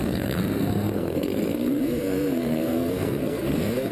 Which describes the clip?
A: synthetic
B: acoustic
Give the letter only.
A